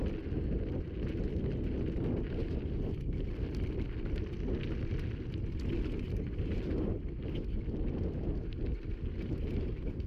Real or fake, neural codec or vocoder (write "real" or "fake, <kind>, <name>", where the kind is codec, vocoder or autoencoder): real